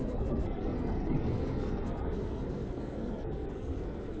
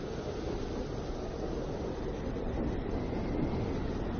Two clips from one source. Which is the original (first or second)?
second